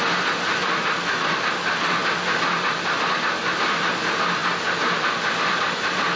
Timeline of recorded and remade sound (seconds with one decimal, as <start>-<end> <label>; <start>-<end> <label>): 0.0-2.0 remade; 2.0-2.6 recorded; 2.6-4.4 remade; 4.4-5.2 recorded; 5.2-6.2 remade